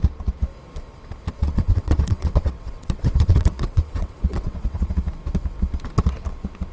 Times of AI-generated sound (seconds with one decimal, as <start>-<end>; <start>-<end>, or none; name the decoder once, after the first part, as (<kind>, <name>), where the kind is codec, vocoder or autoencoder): 1.4-4.9 (vocoder, WaveNeXt)